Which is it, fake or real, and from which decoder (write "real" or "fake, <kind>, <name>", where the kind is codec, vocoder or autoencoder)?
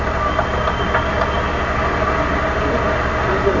real